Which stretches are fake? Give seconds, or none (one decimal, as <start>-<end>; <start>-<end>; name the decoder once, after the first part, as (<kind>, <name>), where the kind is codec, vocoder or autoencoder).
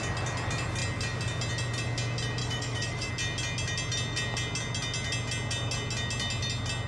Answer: 2.4-3.1 (autoencoder, DAC-VAE)